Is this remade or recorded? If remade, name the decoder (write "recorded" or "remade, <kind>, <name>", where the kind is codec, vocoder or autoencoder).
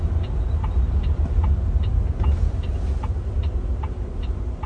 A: recorded